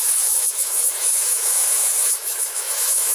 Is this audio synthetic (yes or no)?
yes